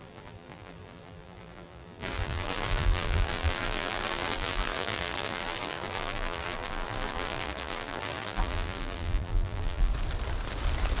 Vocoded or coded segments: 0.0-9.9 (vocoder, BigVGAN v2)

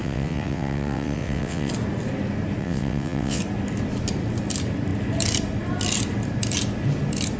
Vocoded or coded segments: 0.0-1.7 (vocoder, WaveNeXt); 2.6-3.4